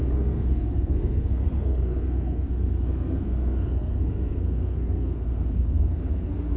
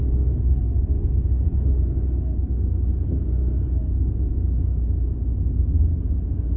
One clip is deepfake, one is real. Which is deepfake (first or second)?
first